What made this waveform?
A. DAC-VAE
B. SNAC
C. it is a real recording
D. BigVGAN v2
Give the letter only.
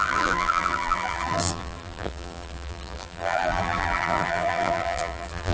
D